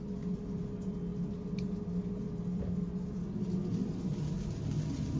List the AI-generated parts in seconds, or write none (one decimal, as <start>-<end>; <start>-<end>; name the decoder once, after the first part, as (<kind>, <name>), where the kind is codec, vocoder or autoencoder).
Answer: none